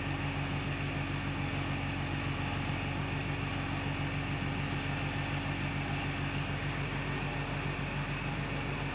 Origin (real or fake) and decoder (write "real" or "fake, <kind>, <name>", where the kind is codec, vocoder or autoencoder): real